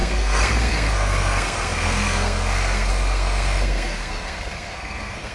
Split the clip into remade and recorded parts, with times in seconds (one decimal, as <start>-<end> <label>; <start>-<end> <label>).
0.0-5.3 remade